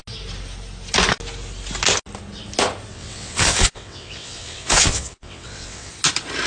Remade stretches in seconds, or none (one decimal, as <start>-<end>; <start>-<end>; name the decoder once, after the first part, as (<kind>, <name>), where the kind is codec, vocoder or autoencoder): 2.9-5.9 (vocoder, WaveNeXt)